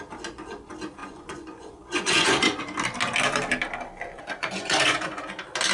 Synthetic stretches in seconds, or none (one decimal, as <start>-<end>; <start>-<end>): 1.0-2.6; 4.3-5.2